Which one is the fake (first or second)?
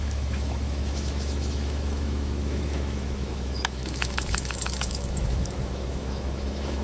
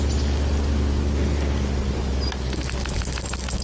first